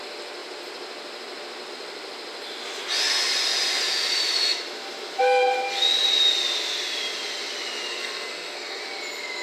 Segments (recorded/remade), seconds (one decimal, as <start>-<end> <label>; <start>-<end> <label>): 0.0-7.9 recorded; 7.9-8.8 remade; 8.8-9.4 recorded